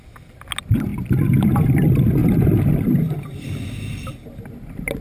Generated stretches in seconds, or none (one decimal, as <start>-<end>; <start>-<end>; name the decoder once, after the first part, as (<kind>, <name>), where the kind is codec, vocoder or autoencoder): none